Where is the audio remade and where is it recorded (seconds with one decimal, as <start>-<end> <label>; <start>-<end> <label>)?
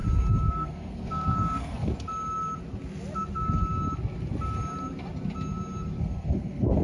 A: 0.0-0.5 recorded; 0.5-1.9 remade; 1.9-6.0 recorded; 6.0-6.8 remade